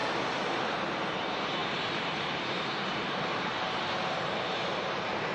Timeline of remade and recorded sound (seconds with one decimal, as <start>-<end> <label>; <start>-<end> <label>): 0.0-5.3 remade